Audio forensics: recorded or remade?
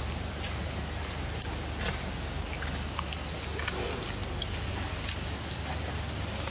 recorded